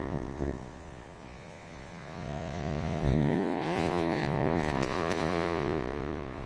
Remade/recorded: remade